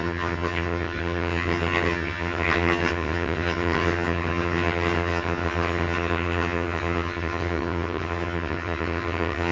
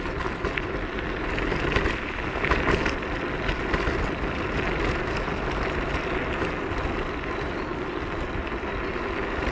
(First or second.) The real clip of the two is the second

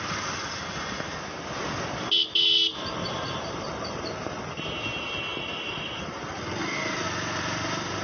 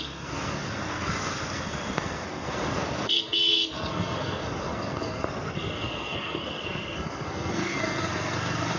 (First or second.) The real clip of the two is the first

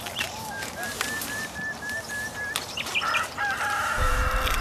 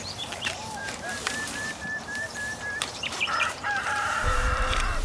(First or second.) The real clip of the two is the first